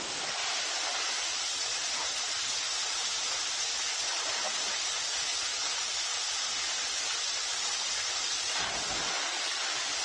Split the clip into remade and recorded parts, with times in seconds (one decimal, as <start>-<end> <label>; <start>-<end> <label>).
0.0-5.3 recorded; 5.3-7.9 remade; 7.9-10.0 recorded